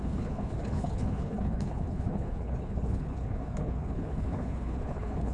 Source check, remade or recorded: remade